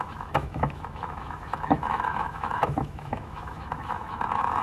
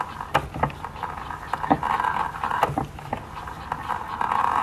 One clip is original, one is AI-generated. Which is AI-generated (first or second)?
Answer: first